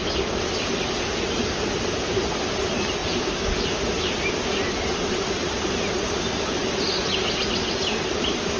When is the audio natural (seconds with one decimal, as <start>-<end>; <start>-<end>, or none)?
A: 0.0-8.6